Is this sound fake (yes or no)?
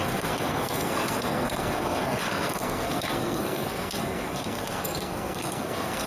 yes